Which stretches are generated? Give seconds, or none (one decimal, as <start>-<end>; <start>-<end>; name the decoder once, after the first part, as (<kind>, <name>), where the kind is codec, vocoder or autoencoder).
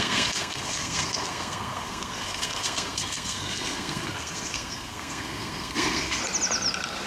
0.0-6.2 (codec, SNAC)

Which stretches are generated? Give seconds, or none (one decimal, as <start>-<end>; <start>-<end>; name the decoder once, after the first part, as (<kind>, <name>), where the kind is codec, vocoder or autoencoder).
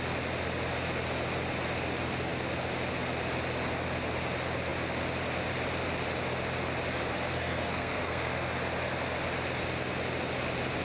7.3-8.5 (codec, SNAC)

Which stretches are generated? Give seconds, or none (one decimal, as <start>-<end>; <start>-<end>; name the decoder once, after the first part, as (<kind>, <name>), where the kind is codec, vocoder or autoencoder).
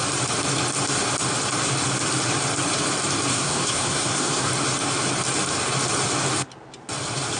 3.3-4.5 (codec, SNAC)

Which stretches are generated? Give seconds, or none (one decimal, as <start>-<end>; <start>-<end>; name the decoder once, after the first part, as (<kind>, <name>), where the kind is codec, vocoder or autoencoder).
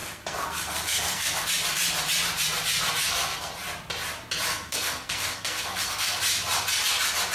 0.0-1.5 (codec, SNAC); 3.0-3.5; 4.5-6.2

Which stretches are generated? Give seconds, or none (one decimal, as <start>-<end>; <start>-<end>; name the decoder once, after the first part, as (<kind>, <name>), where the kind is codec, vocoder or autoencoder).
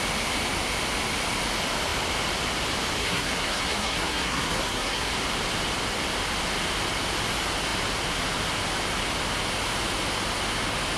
3.0-5.1 (codec, SNAC)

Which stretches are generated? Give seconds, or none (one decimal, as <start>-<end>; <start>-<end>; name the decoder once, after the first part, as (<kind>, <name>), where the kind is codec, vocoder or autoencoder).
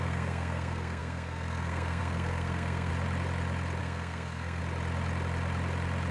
0.0-2.9 (codec, SNAC); 3.8-4.6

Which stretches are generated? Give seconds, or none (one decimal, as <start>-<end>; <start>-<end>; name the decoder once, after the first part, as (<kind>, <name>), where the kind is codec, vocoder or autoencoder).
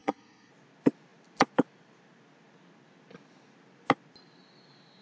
0.0-0.5 (codec, SNAC)